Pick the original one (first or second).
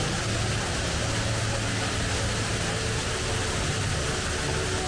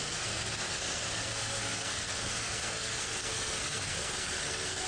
first